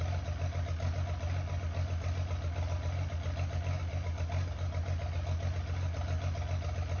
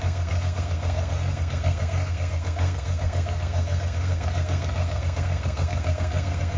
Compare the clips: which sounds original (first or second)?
first